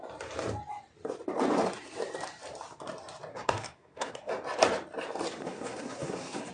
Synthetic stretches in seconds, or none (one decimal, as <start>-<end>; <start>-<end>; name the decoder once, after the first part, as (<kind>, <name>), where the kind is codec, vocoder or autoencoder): 3.3-4.3 (codec, SNAC); 5.4-6.5